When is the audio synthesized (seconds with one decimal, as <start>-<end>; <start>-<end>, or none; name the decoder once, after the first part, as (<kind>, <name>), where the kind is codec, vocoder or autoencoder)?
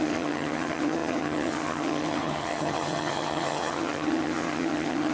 0.0-5.1 (vocoder, HiFi-GAN)